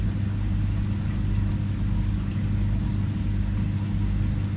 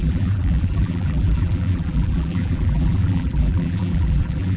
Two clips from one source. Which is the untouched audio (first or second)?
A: first